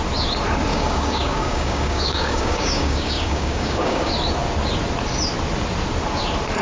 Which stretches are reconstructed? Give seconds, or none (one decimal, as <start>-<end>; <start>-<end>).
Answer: 0.7-4.1